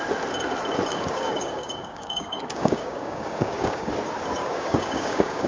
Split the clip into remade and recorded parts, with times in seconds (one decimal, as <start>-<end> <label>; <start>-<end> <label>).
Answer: 0.0-0.9 recorded; 0.9-3.9 remade; 3.9-4.4 recorded; 4.4-5.5 remade

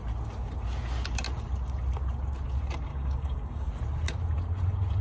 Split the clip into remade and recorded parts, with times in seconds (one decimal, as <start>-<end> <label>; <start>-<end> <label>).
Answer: 0.0-2.9 recorded; 2.9-3.7 remade; 3.7-5.0 recorded

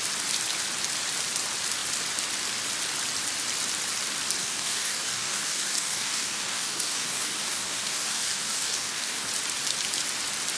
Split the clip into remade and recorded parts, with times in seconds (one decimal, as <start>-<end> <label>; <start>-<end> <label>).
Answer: 0.0-4.4 recorded; 4.4-9.3 remade; 9.3-10.6 recorded

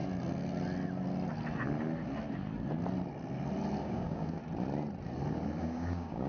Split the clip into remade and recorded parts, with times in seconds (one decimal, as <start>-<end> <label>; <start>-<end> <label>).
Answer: 0.0-3.8 recorded; 3.8-4.4 remade; 4.4-5.6 recorded; 5.6-6.3 remade